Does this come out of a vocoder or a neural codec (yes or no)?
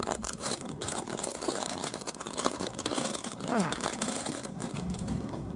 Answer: yes